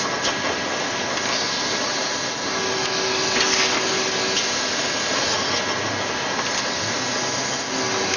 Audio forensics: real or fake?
real